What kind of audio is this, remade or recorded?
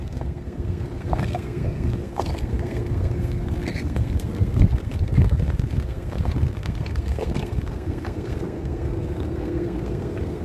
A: remade